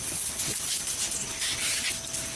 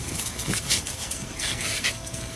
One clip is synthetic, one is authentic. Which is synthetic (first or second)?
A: second